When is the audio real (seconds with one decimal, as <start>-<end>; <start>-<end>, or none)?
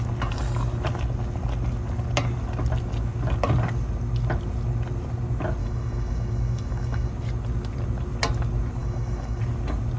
0.0-5.6; 7.1-8.8; 9.4-10.0